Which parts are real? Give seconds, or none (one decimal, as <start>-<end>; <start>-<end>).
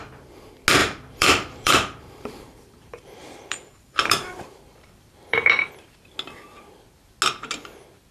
0.0-0.8; 5.7-8.1